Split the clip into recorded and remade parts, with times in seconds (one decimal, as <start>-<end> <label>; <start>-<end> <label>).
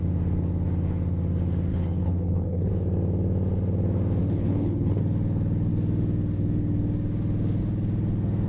0.0-1.7 recorded; 1.7-2.7 remade; 2.7-4.2 recorded; 4.2-5.0 remade; 5.0-8.5 recorded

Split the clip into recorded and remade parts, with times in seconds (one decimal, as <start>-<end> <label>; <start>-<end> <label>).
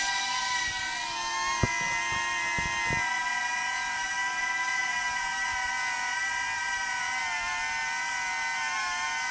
0.0-9.3 recorded